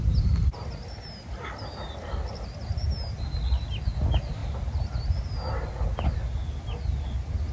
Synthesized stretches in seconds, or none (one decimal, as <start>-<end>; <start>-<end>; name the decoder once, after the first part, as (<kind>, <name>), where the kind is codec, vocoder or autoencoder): none